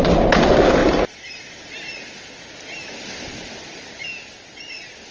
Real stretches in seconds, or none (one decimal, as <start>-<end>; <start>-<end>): 0.0-0.8; 1.7-5.1